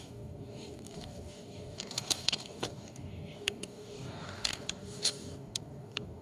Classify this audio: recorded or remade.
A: remade